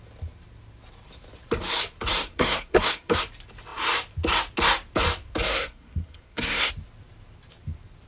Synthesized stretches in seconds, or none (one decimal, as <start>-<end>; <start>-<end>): 2.2-3.2; 5.5-6.7